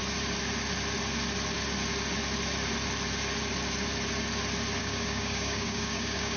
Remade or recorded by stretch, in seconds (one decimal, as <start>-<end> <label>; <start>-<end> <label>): 0.0-4.8 recorded; 4.8-6.4 remade